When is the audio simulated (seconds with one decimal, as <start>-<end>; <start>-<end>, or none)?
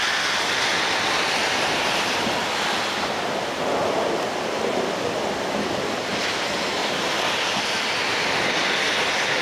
6.8-7.3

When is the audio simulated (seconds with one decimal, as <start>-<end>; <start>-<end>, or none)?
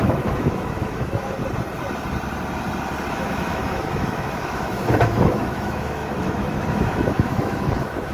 0.0-1.4; 3.1-8.1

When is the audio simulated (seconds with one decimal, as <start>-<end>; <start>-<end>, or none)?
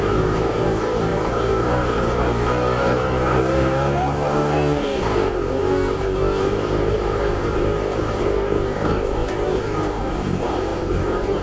0.0-11.4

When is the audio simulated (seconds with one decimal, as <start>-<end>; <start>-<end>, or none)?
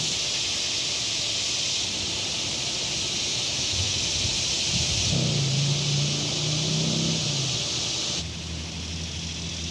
3.3-4.0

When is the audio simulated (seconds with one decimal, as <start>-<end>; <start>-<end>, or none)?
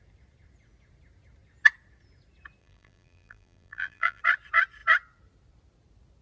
2.6-4.2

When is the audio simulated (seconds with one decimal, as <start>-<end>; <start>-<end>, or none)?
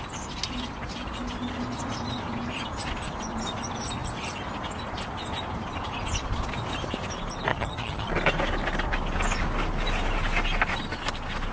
7.5-8.1